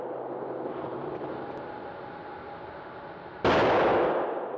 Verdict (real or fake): real